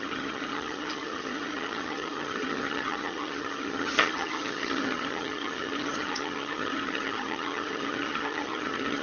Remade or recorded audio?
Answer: remade